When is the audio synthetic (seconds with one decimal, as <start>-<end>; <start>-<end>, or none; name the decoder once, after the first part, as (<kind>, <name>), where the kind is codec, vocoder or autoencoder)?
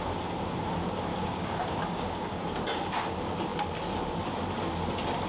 1.1-2.4 (codec, DAC)